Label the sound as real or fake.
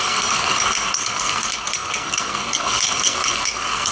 fake